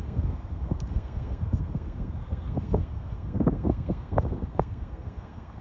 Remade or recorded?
remade